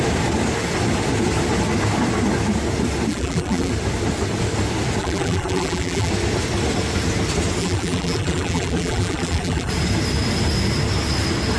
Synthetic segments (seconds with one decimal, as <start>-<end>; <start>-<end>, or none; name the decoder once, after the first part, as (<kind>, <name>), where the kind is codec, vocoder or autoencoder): 3.1-3.7 (vocoder, BigVGAN v2); 5.0-6.1; 7.6-9.7